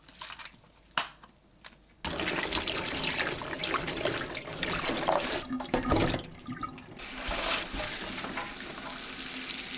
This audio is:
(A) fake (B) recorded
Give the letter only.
B